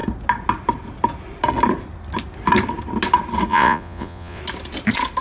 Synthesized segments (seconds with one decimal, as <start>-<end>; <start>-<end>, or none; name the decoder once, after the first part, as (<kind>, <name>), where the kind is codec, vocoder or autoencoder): 3.5-4.4 (vocoder, Vocos)